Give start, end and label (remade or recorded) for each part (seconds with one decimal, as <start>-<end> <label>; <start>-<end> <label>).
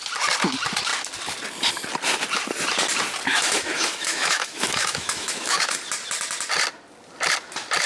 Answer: 0.0-3.3 recorded; 3.3-5.8 remade; 5.8-7.9 recorded